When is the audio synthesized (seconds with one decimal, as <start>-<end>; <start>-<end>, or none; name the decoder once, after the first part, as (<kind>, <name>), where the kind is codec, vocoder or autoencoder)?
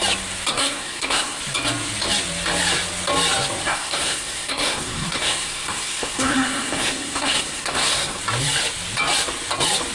0.5-1.4 (codec, SNAC); 3.6-8.2